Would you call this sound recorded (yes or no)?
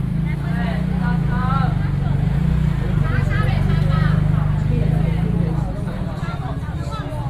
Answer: yes